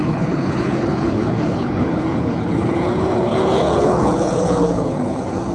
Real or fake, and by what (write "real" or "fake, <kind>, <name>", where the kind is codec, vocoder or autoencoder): fake, codec, HILCodec